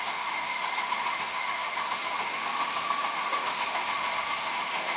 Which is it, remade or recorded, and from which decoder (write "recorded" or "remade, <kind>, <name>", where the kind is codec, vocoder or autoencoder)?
remade, autoencoder, DAC-VAE